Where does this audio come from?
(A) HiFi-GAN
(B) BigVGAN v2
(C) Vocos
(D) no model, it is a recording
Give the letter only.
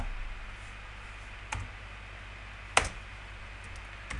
D